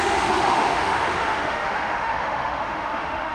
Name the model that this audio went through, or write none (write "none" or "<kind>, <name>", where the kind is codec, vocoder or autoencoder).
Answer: autoencoder, DAC-VAE